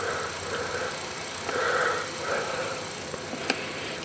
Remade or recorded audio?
recorded